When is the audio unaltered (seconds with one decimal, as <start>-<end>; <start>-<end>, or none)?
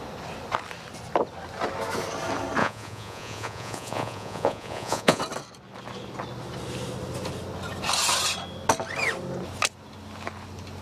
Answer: 0.0-2.6; 5.2-10.8